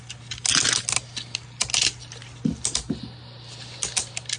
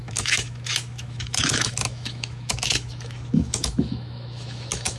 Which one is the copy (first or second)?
second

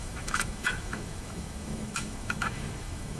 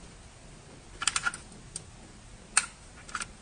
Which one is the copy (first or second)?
first